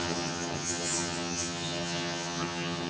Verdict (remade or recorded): remade